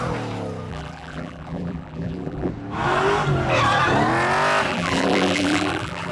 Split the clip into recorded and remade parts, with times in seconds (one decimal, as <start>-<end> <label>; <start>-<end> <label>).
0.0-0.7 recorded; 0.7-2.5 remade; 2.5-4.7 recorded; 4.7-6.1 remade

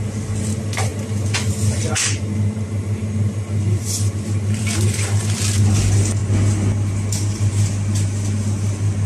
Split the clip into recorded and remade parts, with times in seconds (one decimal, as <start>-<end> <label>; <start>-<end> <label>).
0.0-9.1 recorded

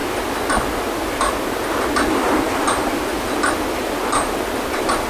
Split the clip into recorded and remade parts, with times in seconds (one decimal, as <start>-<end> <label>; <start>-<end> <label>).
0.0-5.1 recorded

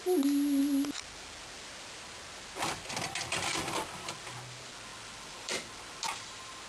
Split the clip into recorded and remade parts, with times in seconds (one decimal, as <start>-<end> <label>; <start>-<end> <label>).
0.0-3.5 recorded; 3.5-4.2 remade; 4.2-4.9 recorded; 4.9-6.1 remade; 6.1-6.7 recorded

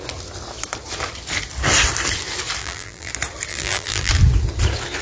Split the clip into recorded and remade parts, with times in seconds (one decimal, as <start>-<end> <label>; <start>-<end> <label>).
0.0-2.6 recorded; 2.6-3.1 remade; 3.1-3.5 recorded; 3.5-4.1 remade; 4.1-5.0 recorded

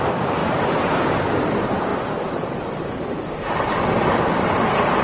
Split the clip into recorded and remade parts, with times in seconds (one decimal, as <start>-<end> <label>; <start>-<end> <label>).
0.0-1.9 remade; 1.9-4.2 recorded; 4.2-5.0 remade